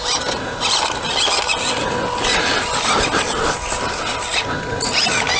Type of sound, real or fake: real